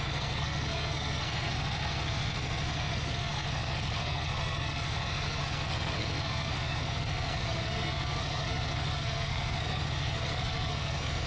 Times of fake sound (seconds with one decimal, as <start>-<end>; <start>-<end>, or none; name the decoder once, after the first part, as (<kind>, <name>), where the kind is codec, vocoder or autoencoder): 0.0-11.3 (codec, SNAC)

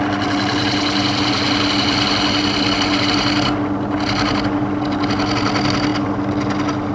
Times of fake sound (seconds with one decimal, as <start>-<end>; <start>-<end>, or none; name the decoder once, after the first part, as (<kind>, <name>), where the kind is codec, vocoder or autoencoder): none

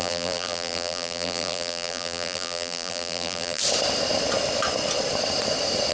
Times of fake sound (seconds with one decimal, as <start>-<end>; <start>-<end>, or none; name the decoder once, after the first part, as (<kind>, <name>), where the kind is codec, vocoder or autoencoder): 0.0-3.6 (vocoder, BigVGAN v2)

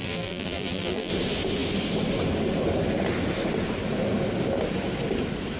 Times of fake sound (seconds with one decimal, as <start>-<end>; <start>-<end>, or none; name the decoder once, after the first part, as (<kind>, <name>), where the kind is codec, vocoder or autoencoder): 0.0-1.1 (vocoder, BigVGAN v2)

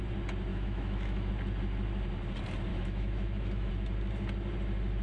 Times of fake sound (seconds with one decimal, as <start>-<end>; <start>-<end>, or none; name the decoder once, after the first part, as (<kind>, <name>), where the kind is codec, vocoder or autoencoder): 0.5-1.3 (autoencoder, DAC-VAE); 2.7-3.7

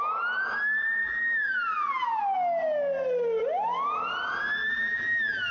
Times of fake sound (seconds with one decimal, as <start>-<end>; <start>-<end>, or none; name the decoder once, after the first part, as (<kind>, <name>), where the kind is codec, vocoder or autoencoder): 1.0-2.2 (vocoder, BigVGAN v2); 4.6-5.5

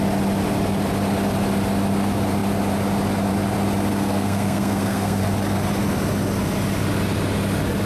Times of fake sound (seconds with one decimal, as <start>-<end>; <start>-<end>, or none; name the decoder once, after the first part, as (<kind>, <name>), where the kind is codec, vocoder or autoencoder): 3.9-5.2 (codec, SNAC)

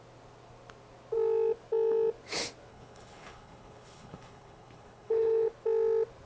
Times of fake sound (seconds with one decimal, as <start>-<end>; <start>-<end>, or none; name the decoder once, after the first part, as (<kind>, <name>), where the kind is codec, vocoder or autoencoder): 2.7-5.5 (codec, HILCodec)